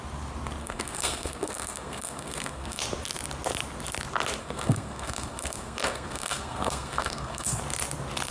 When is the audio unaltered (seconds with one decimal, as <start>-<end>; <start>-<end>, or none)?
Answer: 0.0-0.6; 2.8-4.4; 7.6-8.3